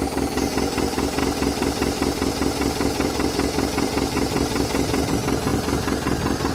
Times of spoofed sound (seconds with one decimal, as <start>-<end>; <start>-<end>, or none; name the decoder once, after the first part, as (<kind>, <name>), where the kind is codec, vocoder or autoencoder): 1.2-5.1 (vocoder, BigVGAN v2)